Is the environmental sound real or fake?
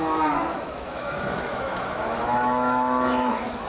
fake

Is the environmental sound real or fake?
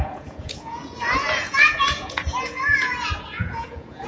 fake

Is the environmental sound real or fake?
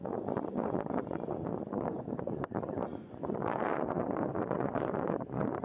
fake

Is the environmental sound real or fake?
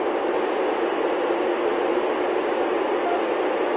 real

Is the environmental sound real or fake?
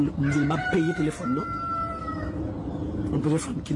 real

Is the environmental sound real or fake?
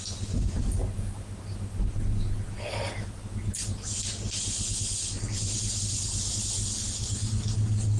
real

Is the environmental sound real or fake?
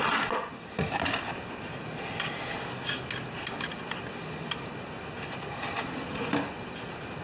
real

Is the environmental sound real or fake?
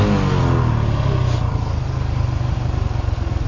real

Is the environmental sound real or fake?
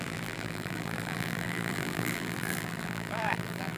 fake